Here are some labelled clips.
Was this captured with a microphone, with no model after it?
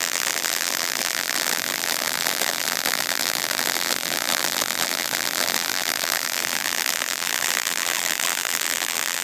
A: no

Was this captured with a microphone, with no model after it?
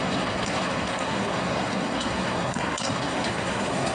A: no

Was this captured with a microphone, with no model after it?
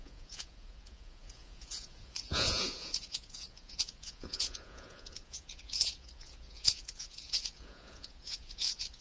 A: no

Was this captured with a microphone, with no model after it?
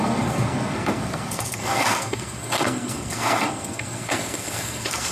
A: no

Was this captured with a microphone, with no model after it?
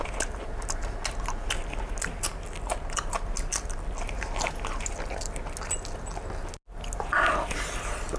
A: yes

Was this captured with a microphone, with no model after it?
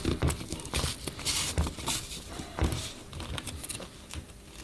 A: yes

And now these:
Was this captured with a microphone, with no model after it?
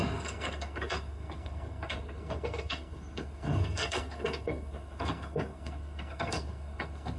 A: no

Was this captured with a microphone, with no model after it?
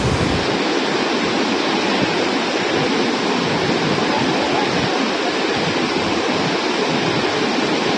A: yes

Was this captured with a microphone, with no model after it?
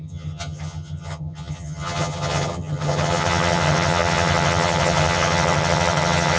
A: no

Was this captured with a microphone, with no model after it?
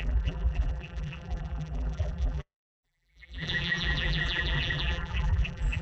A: no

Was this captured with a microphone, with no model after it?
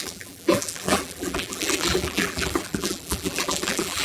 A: no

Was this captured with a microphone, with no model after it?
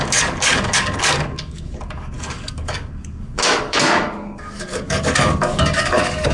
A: no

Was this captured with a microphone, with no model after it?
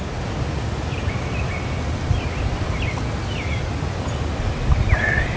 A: yes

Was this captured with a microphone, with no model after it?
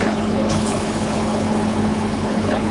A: no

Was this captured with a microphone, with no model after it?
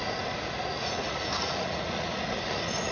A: no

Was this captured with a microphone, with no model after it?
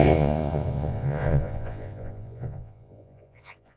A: no